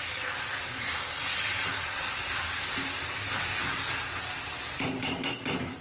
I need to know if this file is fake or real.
real